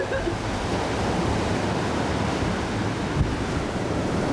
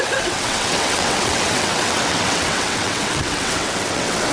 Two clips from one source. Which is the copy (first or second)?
second